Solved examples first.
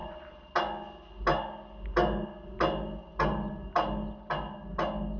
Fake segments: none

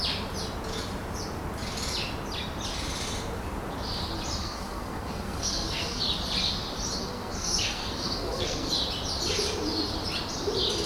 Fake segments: 4.4-6.0 (codec, SNAC); 7.0-8.7

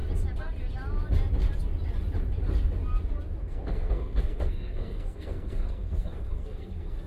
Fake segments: 3.4-7.1 (codec, SNAC)

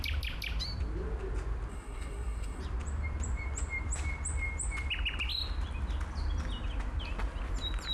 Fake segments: 1.7-2.6 (codec, SNAC)

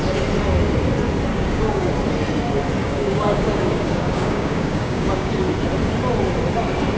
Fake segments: 1.3-1.9 (codec, DAC); 2.8-5.3

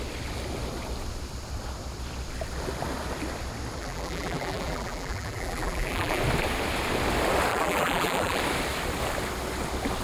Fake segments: 3.8-6.2 (vocoder, BigVGAN v2); 7.5-8.4